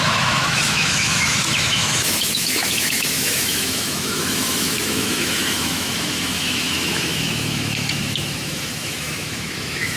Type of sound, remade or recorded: remade